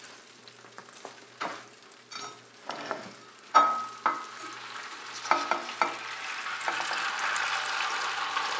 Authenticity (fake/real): real